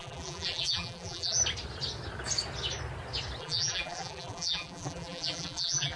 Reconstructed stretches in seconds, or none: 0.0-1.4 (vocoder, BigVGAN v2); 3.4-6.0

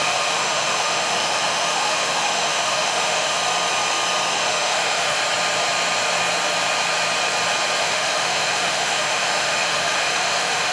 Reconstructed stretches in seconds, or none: 0.0-3.4 (autoencoder, DAC-VAE); 4.3-5.2; 7.8-10.7